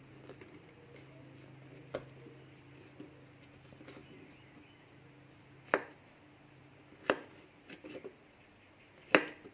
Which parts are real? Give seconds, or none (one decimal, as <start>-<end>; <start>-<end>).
0.0-9.5